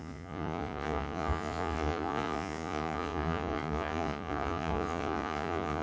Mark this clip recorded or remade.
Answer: remade